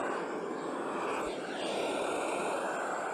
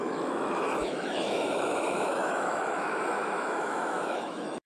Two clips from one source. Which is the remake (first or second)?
second